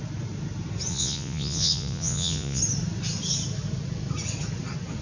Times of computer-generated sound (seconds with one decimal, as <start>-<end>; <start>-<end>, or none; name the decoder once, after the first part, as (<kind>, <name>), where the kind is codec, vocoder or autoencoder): 0.9-2.6 (vocoder, Vocos)